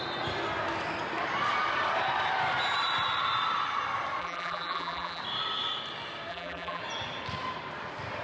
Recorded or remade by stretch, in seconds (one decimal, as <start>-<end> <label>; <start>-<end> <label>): 0.0-4.2 recorded; 4.2-5.2 remade; 5.2-6.3 recorded; 6.3-6.8 remade; 6.8-8.2 recorded